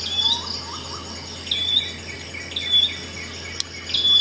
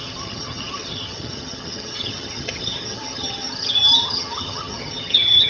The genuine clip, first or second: first